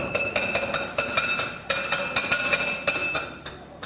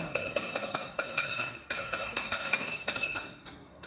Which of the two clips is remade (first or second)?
second